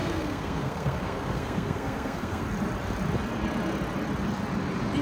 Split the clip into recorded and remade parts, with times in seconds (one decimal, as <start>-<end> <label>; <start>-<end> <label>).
0.0-2.4 remade; 2.4-5.0 recorded